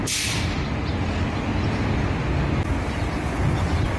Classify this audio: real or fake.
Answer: real